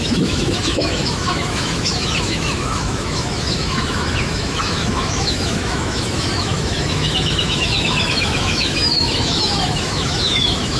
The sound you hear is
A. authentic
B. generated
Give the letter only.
B